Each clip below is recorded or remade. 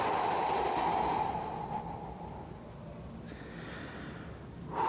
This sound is recorded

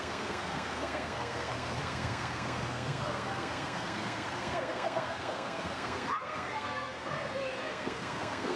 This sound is remade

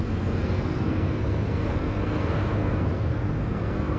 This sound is remade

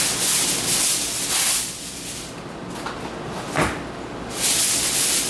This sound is recorded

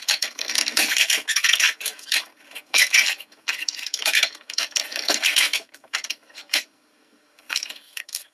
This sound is remade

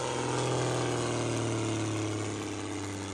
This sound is recorded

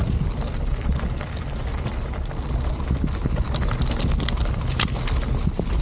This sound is recorded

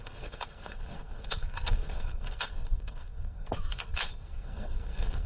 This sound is remade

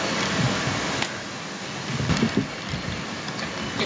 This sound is recorded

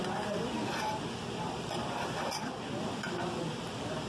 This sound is recorded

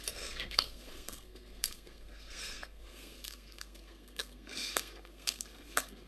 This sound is remade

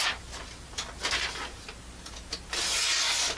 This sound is recorded